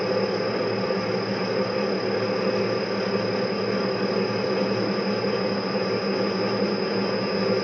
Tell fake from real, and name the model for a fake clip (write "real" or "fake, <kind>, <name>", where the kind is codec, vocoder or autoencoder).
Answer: real